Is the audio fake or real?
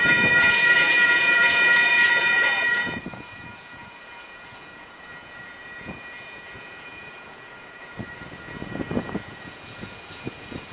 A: fake